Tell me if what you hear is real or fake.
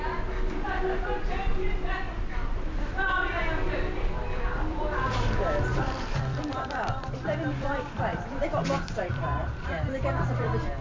fake